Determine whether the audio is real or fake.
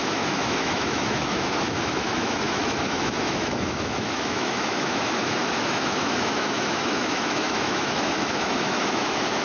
fake